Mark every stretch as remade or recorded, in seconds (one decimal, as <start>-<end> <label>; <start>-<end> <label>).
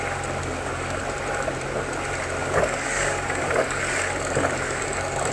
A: 0.0-0.4 recorded; 0.4-1.0 remade; 1.0-2.4 recorded; 2.4-5.3 remade